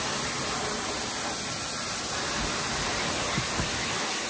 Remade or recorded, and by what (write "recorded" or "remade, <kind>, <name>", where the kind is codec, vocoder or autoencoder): recorded